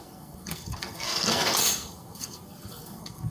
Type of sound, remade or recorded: remade